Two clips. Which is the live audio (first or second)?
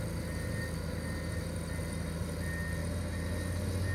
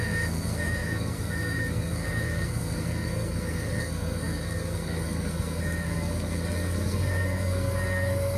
first